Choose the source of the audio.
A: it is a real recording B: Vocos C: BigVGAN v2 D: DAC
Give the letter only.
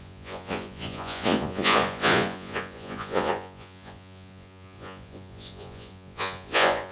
B